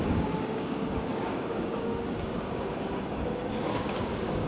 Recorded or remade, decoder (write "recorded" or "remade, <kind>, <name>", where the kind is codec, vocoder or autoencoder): remade, codec, DAC